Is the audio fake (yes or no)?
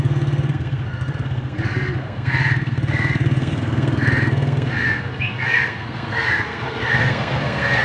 yes